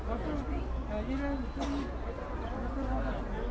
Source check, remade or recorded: recorded